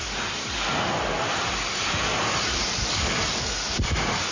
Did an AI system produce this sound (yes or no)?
no